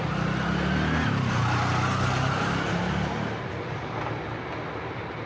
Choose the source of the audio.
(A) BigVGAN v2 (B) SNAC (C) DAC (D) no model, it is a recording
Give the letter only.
D